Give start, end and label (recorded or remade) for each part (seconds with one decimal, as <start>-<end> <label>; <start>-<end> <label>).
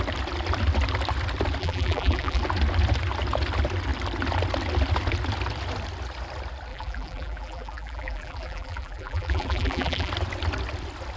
0.0-1.6 recorded; 1.6-2.4 remade; 2.4-6.7 recorded; 6.7-10.1 remade; 10.1-11.2 recorded